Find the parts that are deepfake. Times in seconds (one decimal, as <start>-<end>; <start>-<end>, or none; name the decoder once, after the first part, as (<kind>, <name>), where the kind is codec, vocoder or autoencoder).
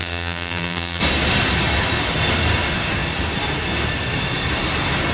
0.0-1.0 (vocoder, BigVGAN v2)